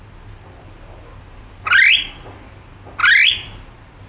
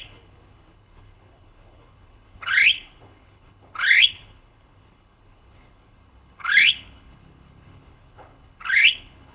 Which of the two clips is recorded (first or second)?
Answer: first